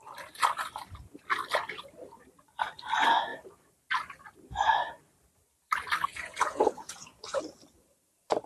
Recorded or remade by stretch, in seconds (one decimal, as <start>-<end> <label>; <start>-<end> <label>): 0.0-6.1 recorded; 6.1-7.4 remade; 7.4-8.5 recorded